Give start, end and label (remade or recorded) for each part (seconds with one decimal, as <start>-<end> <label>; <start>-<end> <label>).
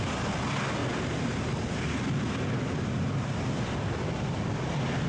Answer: 0.0-5.1 recorded